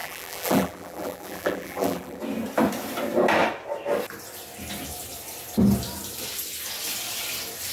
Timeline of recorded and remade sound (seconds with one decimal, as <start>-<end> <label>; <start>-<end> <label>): 0.0-2.2 remade; 2.2-7.7 recorded